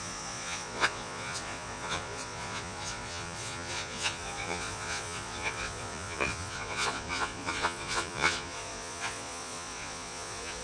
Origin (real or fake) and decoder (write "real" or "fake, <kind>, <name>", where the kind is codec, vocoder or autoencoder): fake, vocoder, Vocos